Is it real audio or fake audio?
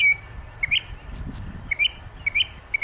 real